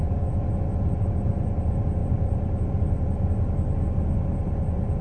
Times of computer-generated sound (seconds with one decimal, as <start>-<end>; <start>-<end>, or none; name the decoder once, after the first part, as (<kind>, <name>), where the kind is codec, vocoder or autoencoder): none